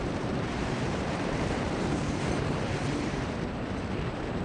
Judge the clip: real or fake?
fake